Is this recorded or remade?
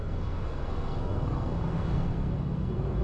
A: remade